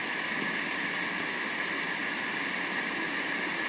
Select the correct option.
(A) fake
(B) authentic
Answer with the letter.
B